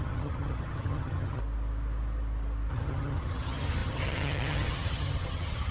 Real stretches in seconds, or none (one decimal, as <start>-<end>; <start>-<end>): 1.4-2.7